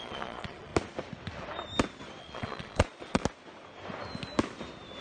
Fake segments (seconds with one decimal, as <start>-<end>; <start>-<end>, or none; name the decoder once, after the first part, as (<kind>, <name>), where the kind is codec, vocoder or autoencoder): 0.0-0.7 (vocoder, Vocos); 2.2-3.2